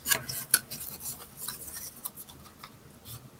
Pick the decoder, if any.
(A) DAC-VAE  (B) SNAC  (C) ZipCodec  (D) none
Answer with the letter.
D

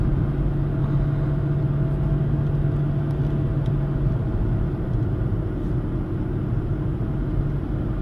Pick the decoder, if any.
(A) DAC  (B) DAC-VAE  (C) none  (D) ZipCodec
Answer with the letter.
C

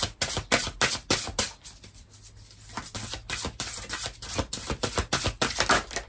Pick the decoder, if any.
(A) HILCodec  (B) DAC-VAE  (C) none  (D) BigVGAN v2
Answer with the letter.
C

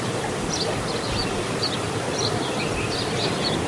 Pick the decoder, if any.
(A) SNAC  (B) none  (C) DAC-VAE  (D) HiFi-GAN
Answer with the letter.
B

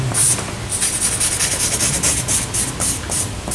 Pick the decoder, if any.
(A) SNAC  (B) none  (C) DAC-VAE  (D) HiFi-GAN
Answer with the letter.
B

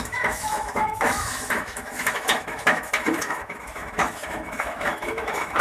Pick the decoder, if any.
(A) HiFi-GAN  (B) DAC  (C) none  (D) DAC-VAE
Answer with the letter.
D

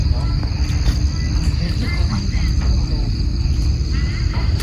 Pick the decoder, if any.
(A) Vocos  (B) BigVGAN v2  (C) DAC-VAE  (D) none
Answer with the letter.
D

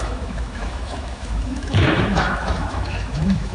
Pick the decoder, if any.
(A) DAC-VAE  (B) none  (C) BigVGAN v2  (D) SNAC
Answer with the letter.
A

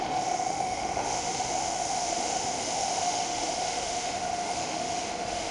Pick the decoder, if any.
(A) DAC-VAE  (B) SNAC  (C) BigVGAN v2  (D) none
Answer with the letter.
A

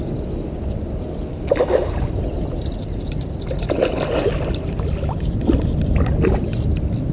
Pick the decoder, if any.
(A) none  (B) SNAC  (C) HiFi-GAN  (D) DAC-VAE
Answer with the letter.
A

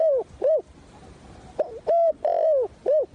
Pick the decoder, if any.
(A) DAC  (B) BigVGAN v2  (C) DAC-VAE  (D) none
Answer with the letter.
D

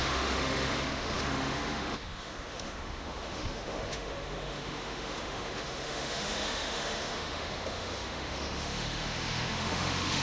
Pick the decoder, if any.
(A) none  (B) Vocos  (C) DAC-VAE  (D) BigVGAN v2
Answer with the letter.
C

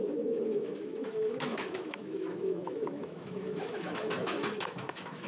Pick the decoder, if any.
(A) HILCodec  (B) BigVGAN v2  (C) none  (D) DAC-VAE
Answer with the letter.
D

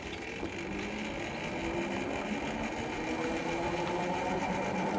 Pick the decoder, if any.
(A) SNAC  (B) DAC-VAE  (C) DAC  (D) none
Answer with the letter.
D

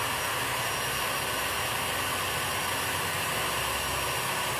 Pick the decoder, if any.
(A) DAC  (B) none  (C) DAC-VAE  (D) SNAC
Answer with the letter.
B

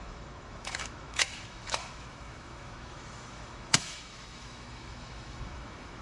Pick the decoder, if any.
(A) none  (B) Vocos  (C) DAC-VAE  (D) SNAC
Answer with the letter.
C